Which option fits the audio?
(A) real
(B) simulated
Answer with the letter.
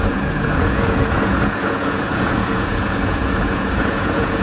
B